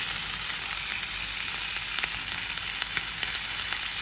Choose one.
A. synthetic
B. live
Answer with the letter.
B